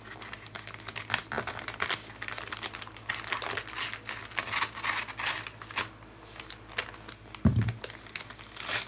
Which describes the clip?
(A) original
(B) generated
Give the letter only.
A